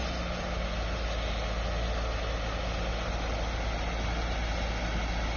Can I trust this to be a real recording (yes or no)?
yes